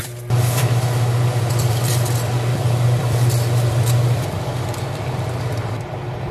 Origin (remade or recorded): remade